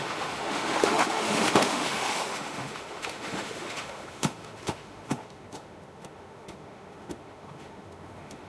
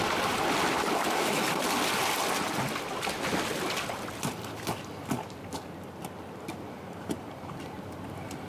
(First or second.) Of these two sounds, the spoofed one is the first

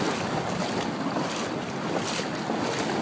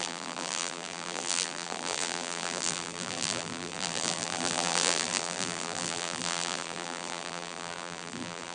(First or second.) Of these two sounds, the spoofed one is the second